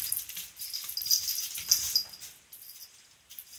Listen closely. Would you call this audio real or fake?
real